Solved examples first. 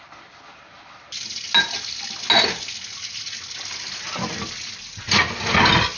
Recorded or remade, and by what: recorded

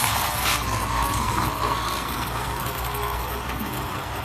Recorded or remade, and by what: remade, codec, SNAC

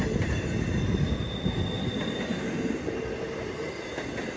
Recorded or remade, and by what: recorded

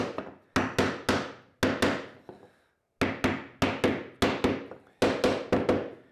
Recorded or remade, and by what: recorded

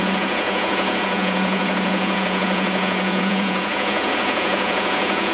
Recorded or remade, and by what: remade, vocoder, Vocos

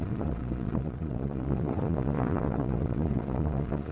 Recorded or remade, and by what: remade, vocoder, Vocos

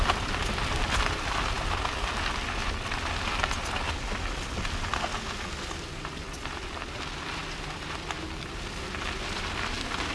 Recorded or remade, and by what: recorded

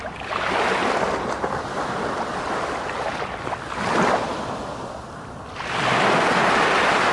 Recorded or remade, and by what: recorded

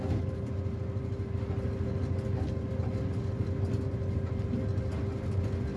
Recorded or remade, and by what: recorded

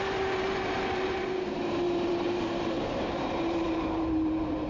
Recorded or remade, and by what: remade, vocoder, BigVGAN v2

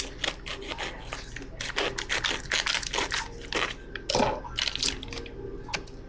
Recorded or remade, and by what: recorded